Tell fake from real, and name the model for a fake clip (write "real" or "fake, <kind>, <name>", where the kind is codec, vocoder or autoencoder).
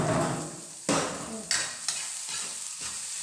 real